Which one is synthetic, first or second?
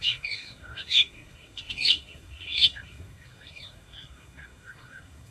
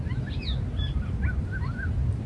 first